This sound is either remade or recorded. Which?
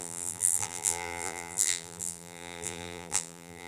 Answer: remade